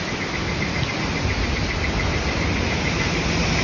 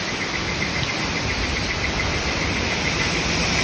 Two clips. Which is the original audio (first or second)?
first